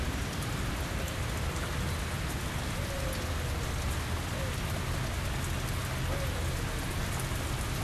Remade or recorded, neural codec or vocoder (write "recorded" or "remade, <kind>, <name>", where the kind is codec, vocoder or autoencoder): recorded